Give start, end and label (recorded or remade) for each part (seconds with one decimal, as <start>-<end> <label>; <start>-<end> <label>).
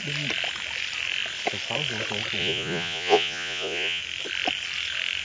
0.0-2.4 recorded; 2.4-4.0 remade; 4.0-5.2 recorded